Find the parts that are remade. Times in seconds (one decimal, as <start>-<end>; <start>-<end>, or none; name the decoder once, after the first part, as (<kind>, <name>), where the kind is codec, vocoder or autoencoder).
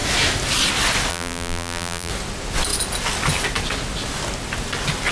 1.1-2.1 (vocoder, BigVGAN v2)